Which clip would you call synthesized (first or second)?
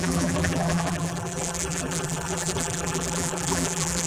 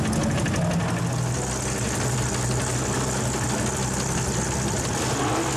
first